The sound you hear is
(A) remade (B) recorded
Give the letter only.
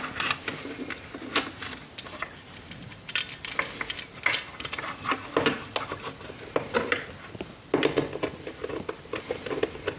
B